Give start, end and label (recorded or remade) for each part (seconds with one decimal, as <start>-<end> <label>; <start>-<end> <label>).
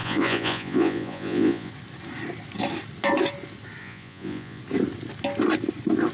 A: 0.0-1.7 remade; 1.7-3.8 recorded; 3.8-4.6 remade; 4.6-6.1 recorded